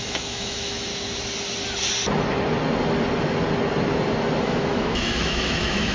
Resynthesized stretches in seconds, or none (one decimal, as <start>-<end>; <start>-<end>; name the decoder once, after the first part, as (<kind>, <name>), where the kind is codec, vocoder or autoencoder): 0.0-0.9 (autoencoder, DAC-VAE); 4.4-5.9

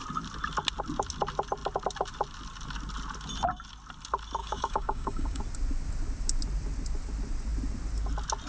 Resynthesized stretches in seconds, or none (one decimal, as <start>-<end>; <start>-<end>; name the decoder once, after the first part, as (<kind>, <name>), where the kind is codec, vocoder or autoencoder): 4.4-5.4 (codec, DAC)

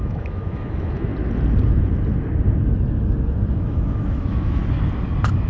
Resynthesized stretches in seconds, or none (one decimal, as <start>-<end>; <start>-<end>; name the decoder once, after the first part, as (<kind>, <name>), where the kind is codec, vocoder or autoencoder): 0.0-1.1 (autoencoder, DAC-VAE); 3.5-4.6

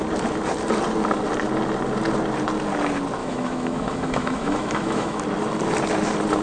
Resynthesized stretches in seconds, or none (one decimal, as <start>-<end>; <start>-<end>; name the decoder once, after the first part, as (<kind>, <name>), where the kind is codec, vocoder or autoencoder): 3.2-5.2 (autoencoder, DAC-VAE)